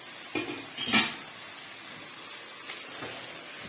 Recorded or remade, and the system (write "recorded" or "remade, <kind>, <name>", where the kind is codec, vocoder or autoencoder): recorded